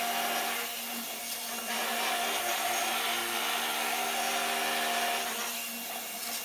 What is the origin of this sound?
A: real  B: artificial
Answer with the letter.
A